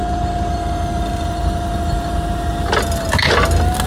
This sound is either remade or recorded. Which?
recorded